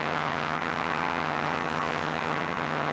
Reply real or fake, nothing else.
fake